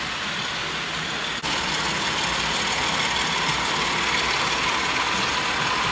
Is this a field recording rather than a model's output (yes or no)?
yes